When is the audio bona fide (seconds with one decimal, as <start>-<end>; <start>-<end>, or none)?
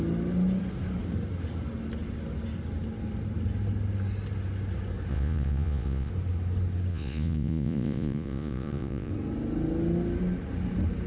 0.0-5.1; 6.1-6.9; 9.1-11.1